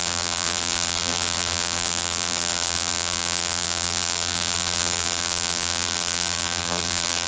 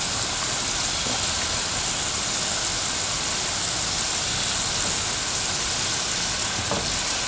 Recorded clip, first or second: second